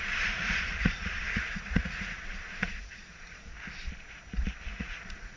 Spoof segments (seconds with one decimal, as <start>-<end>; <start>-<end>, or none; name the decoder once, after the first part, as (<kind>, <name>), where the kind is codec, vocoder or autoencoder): 0.0-3.5 (vocoder, Vocos); 4.7-5.4